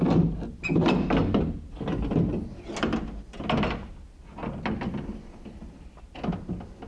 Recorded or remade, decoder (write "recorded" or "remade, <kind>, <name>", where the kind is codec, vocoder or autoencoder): recorded